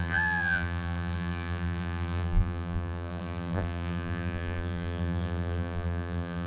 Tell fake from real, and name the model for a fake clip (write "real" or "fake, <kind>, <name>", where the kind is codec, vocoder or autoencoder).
fake, vocoder, BigVGAN v2